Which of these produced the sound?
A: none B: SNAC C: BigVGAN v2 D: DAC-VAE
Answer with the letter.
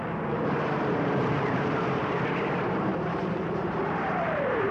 C